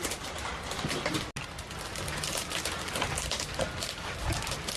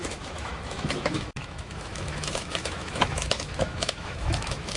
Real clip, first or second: first